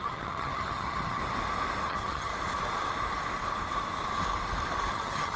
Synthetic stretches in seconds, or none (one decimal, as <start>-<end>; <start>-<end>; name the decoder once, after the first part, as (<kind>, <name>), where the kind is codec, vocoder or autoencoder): 0.0-1.2 (vocoder, HiFi-GAN); 1.9-2.3; 4.9-5.4